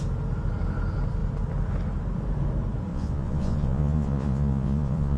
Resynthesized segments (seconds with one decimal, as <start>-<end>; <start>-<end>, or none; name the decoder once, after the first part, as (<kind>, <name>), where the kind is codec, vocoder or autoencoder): 2.9-5.2 (vocoder, Vocos)